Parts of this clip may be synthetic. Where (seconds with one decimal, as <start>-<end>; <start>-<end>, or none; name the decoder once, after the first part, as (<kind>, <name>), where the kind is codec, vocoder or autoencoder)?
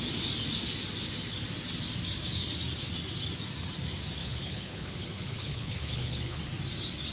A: 4.2-6.4 (codec, HILCodec)